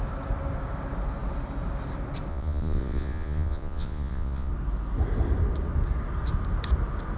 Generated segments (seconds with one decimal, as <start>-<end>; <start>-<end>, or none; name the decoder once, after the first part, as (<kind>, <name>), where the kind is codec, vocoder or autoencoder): 2.3-4.5 (vocoder, Vocos)